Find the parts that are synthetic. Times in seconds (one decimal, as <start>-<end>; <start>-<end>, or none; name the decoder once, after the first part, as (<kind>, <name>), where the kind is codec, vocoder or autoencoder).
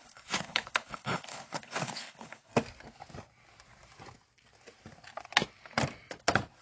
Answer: 0.0-2.5 (codec, HILCodec)